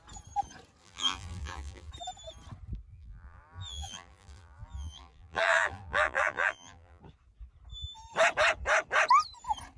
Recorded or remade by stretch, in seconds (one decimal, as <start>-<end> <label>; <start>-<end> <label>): 0.0-0.8 recorded; 0.8-1.9 remade; 1.9-2.9 recorded; 2.9-7.0 remade; 7.0-9.8 recorded